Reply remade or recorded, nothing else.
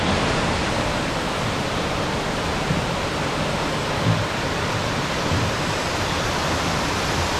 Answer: recorded